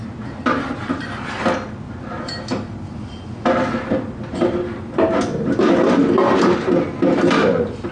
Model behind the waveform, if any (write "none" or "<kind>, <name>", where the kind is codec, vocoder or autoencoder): none